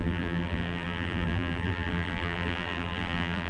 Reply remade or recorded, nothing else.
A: remade